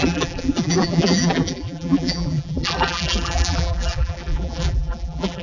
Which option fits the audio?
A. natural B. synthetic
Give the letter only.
B